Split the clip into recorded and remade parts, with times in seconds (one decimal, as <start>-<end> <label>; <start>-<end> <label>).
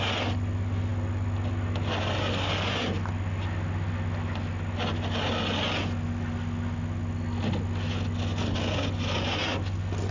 0.0-10.1 recorded